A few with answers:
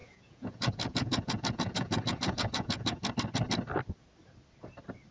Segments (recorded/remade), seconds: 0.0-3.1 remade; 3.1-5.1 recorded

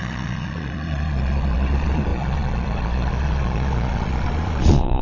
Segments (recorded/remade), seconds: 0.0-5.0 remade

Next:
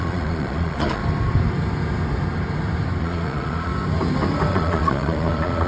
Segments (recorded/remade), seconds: 0.0-1.0 remade; 1.0-3.0 recorded; 3.0-3.7 remade; 3.7-4.5 recorded; 4.5-5.7 remade

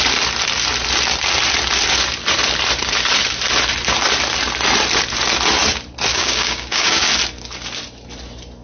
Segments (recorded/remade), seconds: 0.0-6.1 recorded; 6.1-7.1 remade; 7.1-8.6 recorded